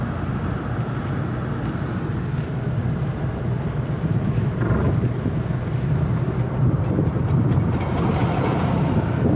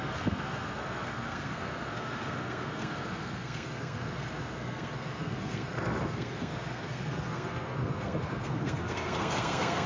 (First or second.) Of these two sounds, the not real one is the second